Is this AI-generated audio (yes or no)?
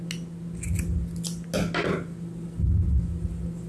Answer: no